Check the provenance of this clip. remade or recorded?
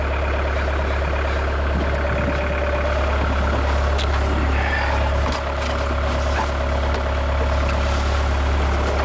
recorded